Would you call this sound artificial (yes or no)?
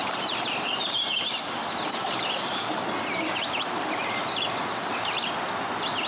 no